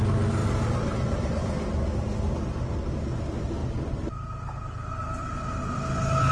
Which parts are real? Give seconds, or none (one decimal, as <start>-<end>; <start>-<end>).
0.0-0.4; 3.0-6.3